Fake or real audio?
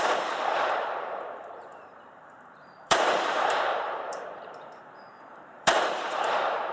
fake